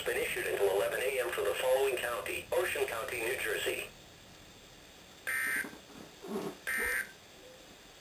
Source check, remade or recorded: recorded